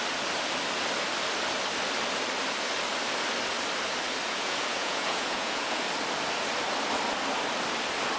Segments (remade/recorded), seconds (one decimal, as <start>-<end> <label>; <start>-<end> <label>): 0.0-4.3 recorded; 4.3-5.8 remade; 5.8-8.2 recorded